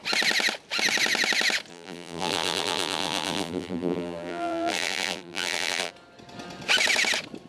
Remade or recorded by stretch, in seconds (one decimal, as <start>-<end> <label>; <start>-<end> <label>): 0.0-1.7 recorded; 1.7-5.9 remade; 5.9-7.5 recorded